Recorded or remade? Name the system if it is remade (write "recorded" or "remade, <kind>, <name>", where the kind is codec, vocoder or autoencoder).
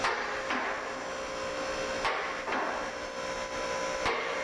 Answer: recorded